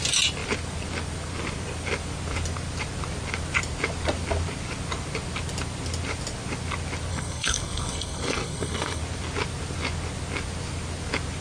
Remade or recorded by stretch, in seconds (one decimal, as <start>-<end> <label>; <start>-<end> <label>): 0.0-7.1 recorded; 7.1-9.0 remade; 9.0-11.4 recorded